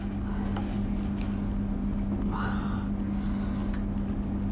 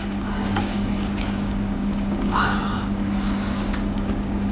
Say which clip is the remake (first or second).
second